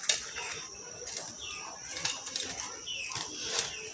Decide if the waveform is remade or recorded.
recorded